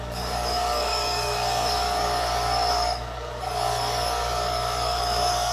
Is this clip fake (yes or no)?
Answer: yes